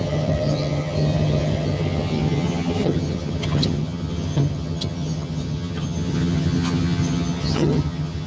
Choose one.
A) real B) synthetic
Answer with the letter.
B